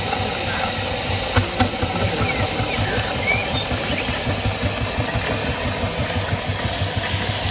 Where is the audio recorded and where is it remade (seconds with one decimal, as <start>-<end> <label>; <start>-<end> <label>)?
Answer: 0.0-1.7 recorded; 1.7-3.9 remade; 3.9-7.5 recorded